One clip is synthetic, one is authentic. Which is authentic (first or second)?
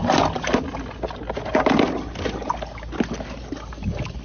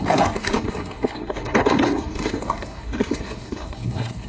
first